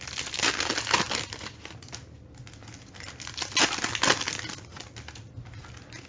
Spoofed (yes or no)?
no